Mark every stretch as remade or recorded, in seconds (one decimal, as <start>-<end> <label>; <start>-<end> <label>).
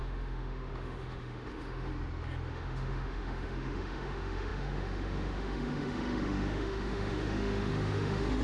0.0-1.9 remade; 1.9-2.5 recorded; 2.5-8.4 remade